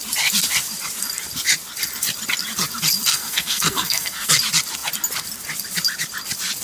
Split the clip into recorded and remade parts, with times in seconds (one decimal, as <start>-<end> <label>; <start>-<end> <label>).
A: 0.0-3.1 recorded; 3.1-4.3 remade; 4.3-6.6 recorded